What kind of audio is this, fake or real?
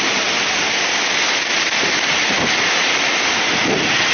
real